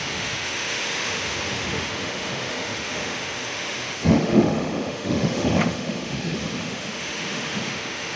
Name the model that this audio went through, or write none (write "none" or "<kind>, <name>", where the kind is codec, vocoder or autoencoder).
autoencoder, DAC-VAE